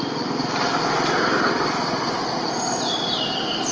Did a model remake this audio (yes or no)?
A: no